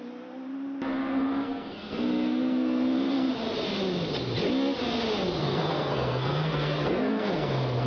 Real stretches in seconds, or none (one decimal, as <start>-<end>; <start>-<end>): 0.0-1.0; 3.3-5.4